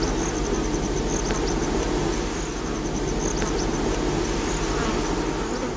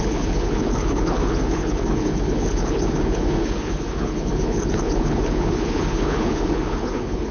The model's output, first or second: second